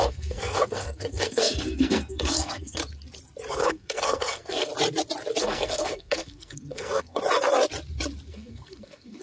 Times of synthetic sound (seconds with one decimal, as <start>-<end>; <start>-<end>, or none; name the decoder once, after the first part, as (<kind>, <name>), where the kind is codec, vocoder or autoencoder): 0.0-2.8 (codec, SNAC); 3.5-4.7; 5.4-7.2; 8.3-9.2